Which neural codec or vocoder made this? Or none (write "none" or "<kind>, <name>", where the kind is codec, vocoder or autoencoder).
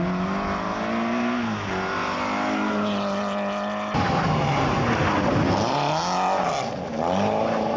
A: none